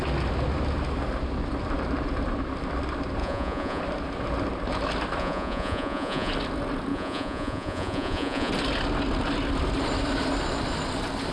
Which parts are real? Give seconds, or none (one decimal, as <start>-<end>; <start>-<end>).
0.0-3.2; 3.8-5.2; 6.3-6.9; 8.5-11.3